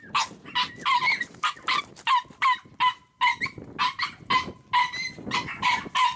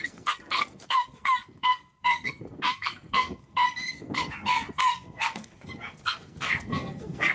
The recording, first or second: first